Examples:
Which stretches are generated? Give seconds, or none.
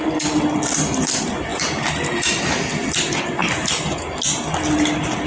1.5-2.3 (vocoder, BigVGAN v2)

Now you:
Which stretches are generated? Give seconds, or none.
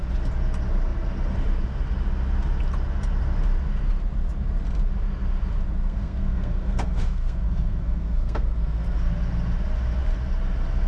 5.8-9.1 (codec, SNAC)